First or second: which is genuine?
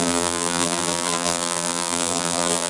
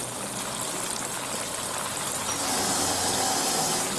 second